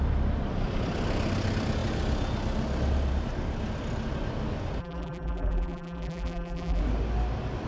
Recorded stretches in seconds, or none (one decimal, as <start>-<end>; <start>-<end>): 0.0-4.8; 6.8-7.7